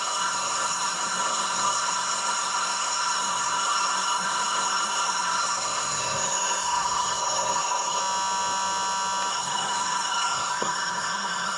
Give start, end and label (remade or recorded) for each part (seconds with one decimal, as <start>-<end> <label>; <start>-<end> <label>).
0.0-8.0 remade; 8.0-9.3 recorded; 9.3-11.6 remade